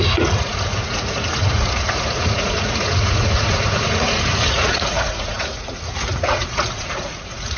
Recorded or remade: remade